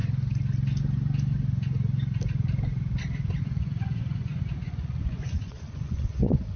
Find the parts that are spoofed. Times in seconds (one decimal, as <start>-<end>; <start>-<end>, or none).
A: 3.4-6.6

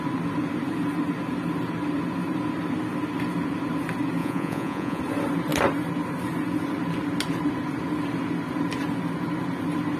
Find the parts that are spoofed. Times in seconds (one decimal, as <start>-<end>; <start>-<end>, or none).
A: 4.2-5.0

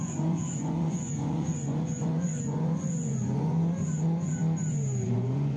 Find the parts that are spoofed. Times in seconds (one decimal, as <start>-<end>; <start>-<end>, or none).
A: 0.0-4.4; 5.1-5.6

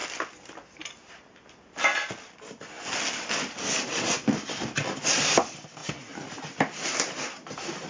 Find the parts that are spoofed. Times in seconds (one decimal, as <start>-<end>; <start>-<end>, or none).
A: none

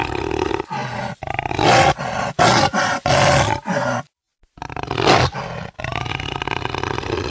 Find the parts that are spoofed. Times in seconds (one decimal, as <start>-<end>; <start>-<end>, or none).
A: none

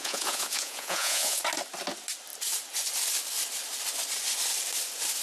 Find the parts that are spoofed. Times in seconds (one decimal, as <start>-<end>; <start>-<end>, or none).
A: 0.0-1.4